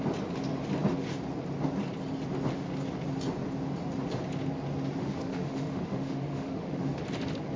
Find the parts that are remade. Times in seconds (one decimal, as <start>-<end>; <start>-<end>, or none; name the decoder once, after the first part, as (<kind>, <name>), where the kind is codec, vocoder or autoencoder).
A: 5.0-6.8 (autoencoder, DAC-VAE)